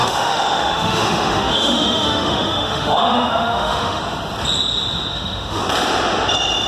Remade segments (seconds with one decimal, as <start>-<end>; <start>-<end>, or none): 0.0-4.0; 5.1-5.6